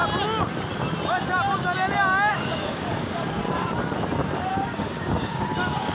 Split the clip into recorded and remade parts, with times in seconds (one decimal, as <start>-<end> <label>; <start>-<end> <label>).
0.0-2.3 recorded; 2.3-3.4 remade; 3.4-4.5 recorded; 4.5-5.9 remade

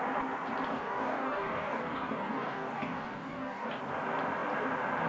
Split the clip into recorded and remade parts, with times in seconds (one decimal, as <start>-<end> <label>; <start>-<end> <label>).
0.0-0.7 recorded; 0.7-3.8 remade; 3.8-5.1 recorded

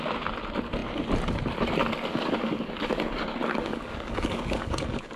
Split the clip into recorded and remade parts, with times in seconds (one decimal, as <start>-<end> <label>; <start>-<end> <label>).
0.0-2.1 recorded; 2.1-5.2 remade

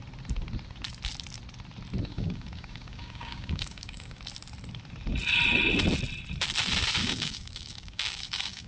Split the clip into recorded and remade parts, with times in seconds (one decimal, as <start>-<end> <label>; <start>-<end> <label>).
0.0-2.1 recorded; 2.1-4.2 remade; 4.2-7.0 recorded; 7.0-8.7 remade

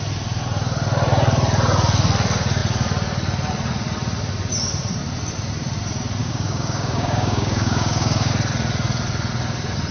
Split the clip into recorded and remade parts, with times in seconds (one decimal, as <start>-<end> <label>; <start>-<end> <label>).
0.0-6.2 recorded; 6.2-8.3 remade; 8.3-9.9 recorded

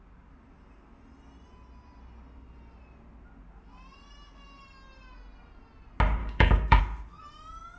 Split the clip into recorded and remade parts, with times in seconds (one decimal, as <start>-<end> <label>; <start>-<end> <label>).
0.0-6.2 recorded; 6.2-6.8 remade; 6.8-7.8 recorded

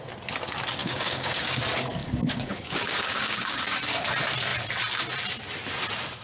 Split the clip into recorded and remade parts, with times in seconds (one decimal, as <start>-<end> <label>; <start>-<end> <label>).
0.0-0.8 recorded; 0.8-1.6 remade; 1.6-2.0 recorded; 2.0-3.6 remade; 3.6-6.2 recorded